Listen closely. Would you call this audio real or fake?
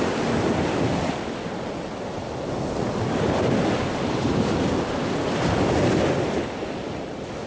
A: real